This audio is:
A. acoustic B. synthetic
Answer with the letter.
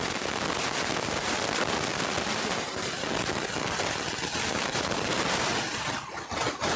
A